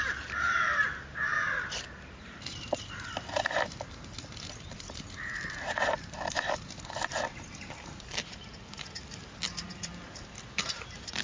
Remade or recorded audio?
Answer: remade